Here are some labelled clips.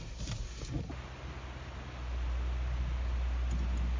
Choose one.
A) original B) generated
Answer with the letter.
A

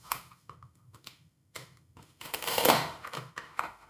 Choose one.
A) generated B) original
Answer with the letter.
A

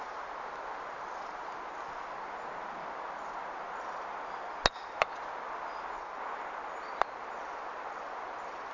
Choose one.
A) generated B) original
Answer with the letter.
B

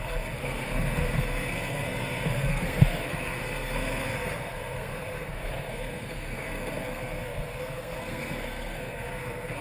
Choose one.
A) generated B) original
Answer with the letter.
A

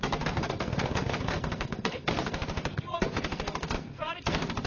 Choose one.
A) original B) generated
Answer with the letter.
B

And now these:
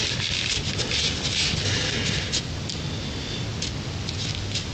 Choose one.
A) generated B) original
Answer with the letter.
B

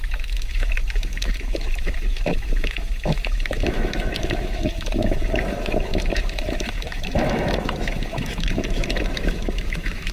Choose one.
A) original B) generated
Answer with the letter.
B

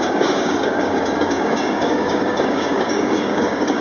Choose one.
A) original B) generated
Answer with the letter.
B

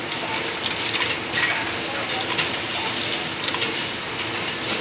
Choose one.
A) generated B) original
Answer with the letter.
B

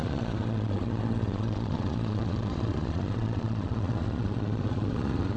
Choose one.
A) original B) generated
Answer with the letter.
B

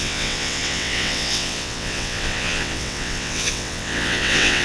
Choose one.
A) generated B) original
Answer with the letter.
A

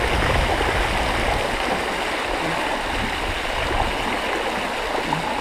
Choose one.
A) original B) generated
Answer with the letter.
A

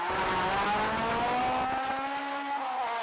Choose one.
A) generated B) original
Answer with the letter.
B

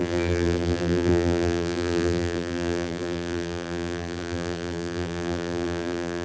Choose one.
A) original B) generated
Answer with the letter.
B